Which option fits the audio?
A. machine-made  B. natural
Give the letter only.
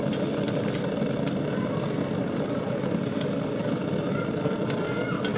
B